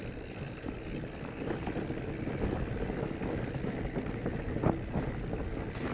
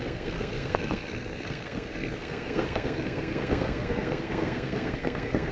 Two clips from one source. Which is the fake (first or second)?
second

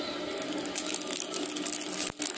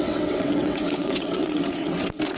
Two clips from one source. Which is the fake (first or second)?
second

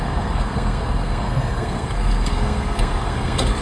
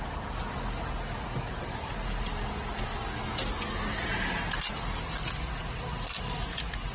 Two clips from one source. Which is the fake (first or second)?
first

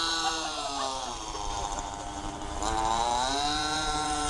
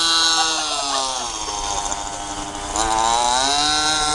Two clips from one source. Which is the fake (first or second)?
first